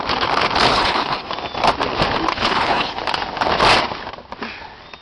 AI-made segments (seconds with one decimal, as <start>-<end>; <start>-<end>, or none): 0.7-1.3; 2.3-3.0